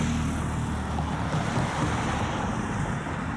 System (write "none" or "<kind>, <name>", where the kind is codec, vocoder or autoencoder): none